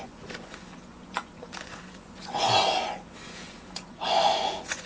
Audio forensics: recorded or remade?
remade